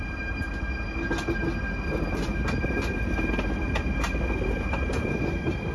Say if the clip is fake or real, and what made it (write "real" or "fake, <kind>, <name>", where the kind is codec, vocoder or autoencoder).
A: real